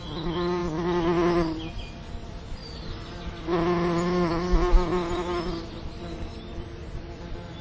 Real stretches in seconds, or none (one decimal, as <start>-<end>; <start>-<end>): 0.0-7.6